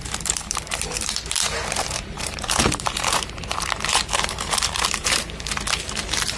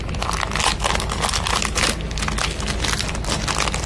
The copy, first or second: first